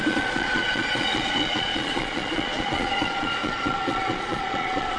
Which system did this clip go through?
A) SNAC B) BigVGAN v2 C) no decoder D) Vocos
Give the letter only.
D